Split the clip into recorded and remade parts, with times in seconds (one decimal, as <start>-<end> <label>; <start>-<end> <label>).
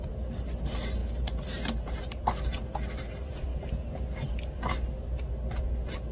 0.0-6.1 remade